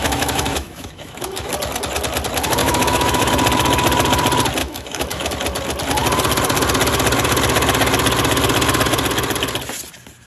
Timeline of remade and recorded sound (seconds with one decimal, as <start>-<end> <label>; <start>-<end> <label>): 0.0-1.5 remade; 1.5-2.6 recorded; 2.6-3.3 remade; 3.3-4.6 recorded; 4.6-5.3 remade; 5.3-10.3 recorded